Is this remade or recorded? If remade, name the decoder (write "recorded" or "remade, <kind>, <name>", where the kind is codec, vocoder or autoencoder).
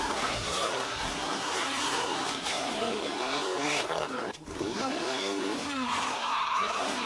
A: remade, codec, SNAC